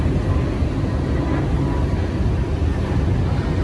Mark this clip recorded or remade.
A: recorded